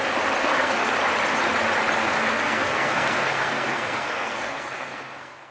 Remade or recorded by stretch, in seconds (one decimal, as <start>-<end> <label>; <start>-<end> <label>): 0.0-0.4 recorded; 0.4-0.9 remade; 0.9-2.0 recorded; 2.0-5.5 remade